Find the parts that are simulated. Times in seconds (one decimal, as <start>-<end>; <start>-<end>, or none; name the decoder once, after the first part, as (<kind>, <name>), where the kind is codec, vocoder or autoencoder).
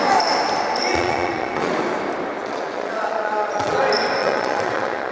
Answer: 0.9-1.7 (vocoder, Vocos); 2.4-3.8; 4.2-5.1